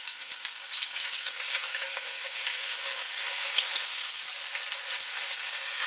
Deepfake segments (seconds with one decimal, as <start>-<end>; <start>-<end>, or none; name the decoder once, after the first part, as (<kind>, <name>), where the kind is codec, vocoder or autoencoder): 0.0-4.2 (codec, SNAC); 5.1-5.9